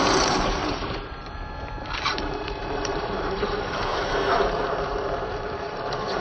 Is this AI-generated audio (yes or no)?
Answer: yes